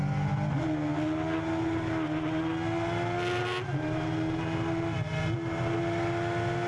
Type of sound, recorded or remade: recorded